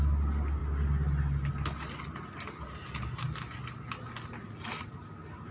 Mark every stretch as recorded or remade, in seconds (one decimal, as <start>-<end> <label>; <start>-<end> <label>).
0.0-5.5 recorded